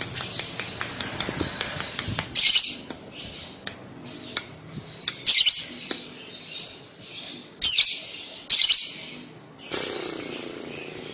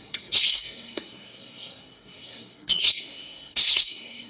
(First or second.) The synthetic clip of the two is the second